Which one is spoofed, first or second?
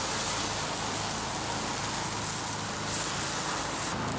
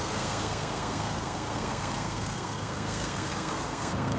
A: second